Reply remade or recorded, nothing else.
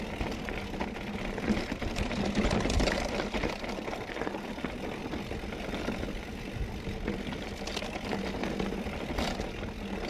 recorded